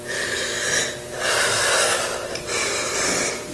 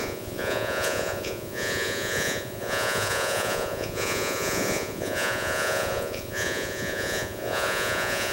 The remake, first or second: second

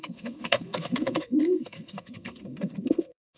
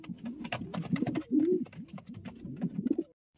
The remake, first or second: first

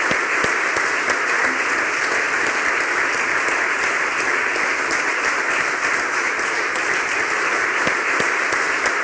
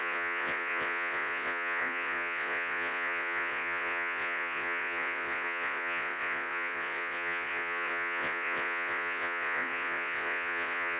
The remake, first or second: second